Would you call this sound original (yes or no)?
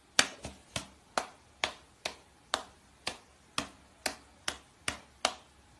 yes